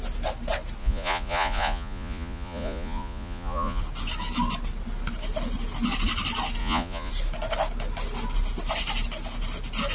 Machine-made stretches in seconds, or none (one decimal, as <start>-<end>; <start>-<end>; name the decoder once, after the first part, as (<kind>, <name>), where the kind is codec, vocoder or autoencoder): 0.8-3.8 (vocoder, Vocos); 6.6-7.1